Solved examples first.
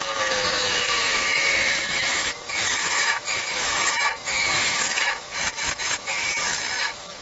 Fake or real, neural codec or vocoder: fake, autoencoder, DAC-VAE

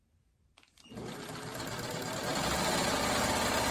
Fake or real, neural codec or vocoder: real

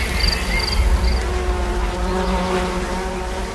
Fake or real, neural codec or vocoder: real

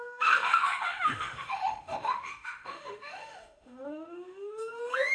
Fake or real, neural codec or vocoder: fake, autoencoder, DAC-VAE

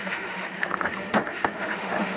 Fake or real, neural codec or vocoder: fake, autoencoder, DAC-VAE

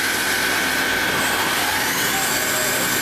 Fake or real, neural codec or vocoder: real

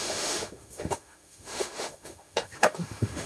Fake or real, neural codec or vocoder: fake, autoencoder, DAC-VAE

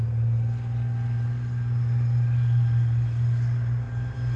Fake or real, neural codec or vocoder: real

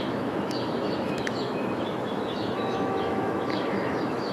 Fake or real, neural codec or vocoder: fake, autoencoder, DAC-VAE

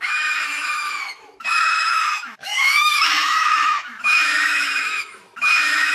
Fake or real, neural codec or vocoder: fake, autoencoder, DAC-VAE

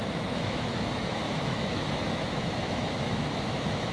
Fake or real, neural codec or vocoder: fake, autoencoder, DAC-VAE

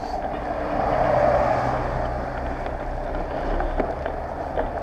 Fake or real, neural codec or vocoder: real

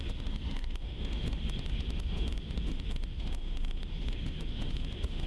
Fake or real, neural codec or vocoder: fake, autoencoder, DAC-VAE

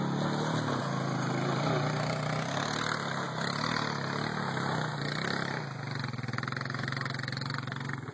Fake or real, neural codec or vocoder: real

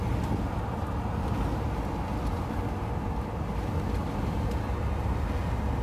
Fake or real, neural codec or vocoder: real